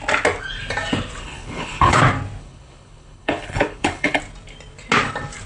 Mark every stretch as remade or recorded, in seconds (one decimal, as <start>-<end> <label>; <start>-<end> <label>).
0.0-1.2 recorded; 1.2-2.0 remade; 2.0-2.4 recorded; 2.4-4.2 remade; 4.2-5.5 recorded